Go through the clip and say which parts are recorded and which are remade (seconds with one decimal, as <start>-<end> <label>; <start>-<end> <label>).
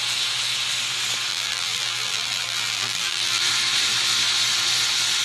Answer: 0.0-1.3 recorded; 1.3-3.4 remade; 3.4-5.2 recorded